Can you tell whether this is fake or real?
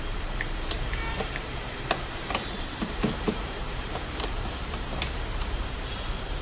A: fake